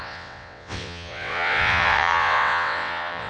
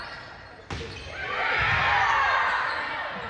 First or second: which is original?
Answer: second